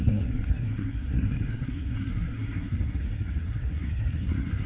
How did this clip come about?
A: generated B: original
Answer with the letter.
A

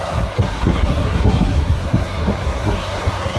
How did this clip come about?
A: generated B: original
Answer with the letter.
A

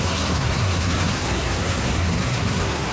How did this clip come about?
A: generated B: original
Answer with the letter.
A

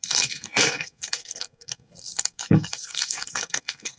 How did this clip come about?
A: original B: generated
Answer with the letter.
B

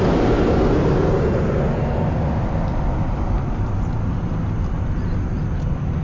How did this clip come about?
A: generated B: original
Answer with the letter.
B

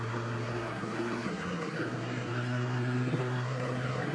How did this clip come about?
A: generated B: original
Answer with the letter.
A